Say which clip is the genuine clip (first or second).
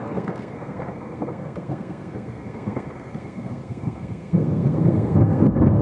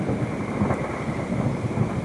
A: second